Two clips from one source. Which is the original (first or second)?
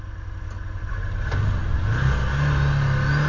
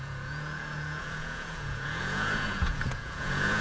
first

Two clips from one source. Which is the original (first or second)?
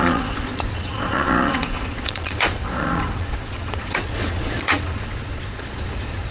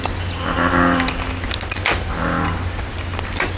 second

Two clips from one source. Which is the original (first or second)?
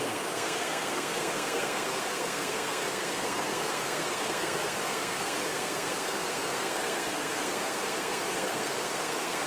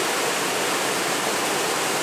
second